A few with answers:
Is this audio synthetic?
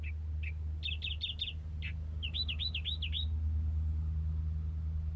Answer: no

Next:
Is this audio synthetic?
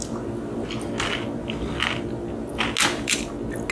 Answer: no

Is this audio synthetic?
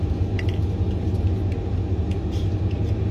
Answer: no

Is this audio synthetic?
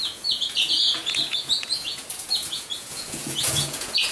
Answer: yes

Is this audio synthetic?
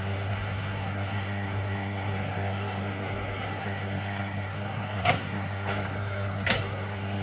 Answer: yes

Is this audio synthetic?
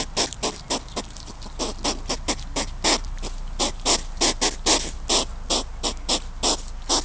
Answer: no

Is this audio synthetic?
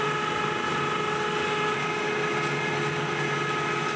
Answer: no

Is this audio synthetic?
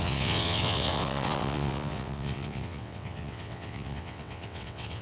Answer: yes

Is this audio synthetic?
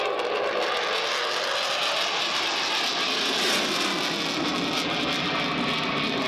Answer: no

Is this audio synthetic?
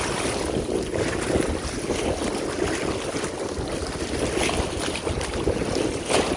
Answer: no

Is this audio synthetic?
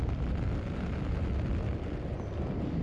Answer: no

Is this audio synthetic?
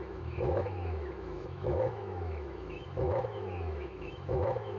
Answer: yes